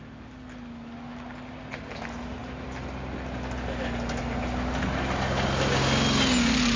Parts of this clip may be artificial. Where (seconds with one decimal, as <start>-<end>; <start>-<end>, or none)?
none

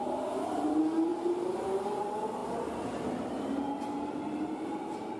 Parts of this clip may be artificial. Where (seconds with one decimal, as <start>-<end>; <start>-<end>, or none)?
none